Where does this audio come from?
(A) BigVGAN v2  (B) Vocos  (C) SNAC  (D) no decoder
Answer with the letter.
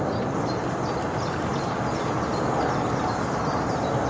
D